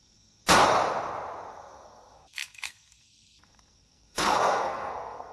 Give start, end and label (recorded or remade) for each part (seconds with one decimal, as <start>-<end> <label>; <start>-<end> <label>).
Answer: 0.0-0.4 remade; 0.4-1.5 recorded; 1.5-5.3 remade